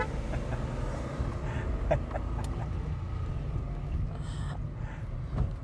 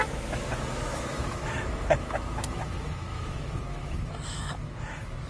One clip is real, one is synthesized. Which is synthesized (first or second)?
second